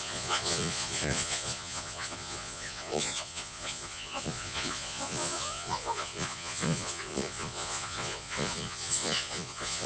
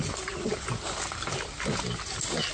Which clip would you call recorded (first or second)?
second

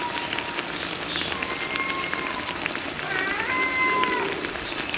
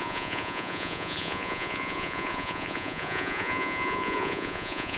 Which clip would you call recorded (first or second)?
first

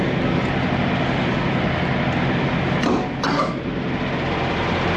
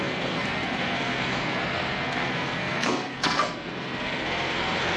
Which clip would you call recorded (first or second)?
first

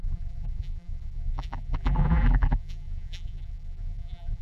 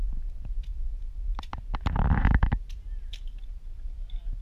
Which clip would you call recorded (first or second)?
second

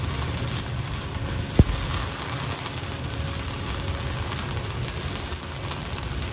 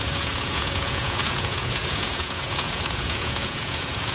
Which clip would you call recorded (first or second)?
first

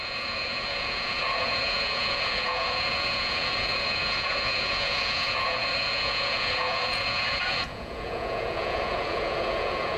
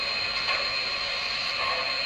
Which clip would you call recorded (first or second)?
second